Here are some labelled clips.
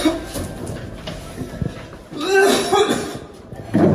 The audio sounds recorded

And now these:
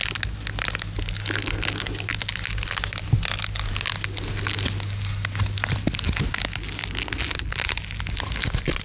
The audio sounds recorded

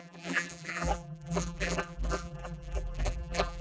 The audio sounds remade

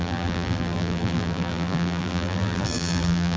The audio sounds remade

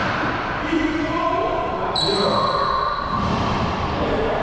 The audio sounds remade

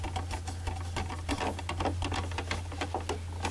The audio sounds recorded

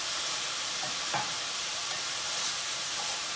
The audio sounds remade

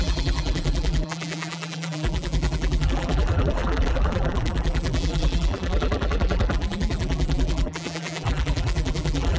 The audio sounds remade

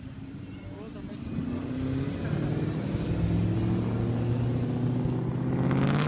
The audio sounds recorded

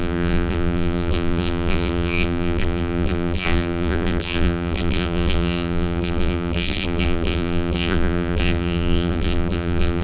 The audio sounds remade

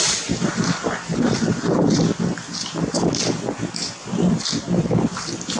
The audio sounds recorded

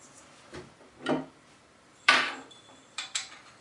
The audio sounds remade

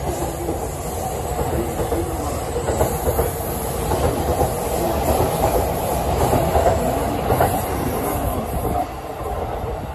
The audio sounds recorded